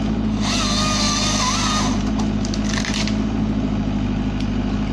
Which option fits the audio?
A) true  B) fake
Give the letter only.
A